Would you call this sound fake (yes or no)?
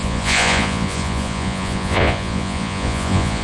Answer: yes